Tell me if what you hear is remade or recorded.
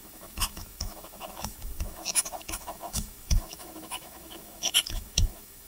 remade